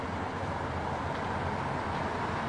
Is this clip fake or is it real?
real